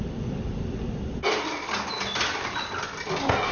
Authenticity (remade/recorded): recorded